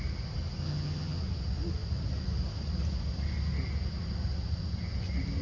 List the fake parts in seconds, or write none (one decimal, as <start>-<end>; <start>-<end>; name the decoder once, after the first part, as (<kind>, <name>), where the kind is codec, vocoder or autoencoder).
0.6-1.2 (vocoder, HiFi-GAN)